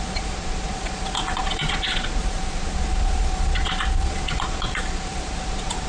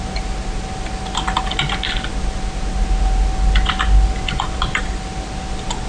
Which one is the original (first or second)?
second